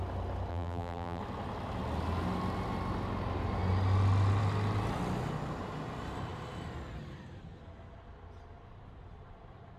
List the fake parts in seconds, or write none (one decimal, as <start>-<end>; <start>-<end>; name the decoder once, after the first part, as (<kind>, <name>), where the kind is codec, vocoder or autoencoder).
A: 0.5-1.2 (vocoder, BigVGAN v2)